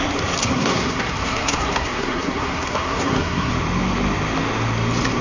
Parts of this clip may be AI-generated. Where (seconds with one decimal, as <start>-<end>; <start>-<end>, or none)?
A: 0.4-3.5